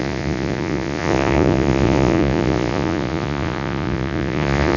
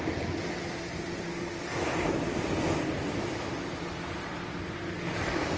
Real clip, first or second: second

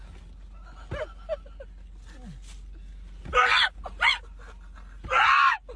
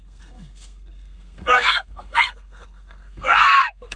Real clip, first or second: first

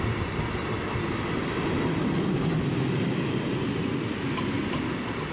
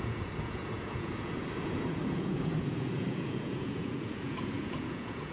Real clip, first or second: first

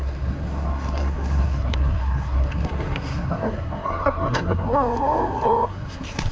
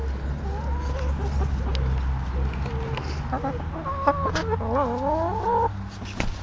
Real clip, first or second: second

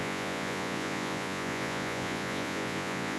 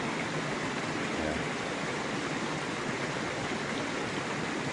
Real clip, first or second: second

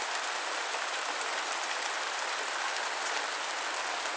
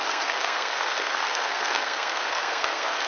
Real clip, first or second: first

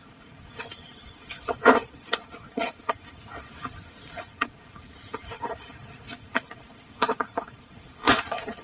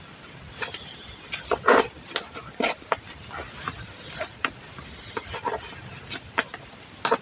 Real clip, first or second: second